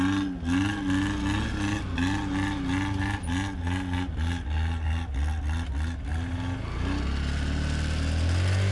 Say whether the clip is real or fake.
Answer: real